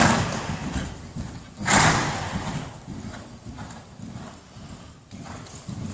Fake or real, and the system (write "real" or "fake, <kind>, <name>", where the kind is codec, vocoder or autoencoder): real